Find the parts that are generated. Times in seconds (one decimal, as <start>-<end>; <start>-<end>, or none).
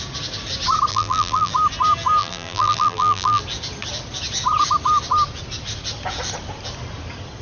0.9-1.5; 2.2-3.4